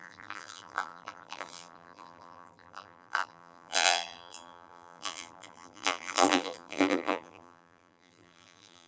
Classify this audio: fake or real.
fake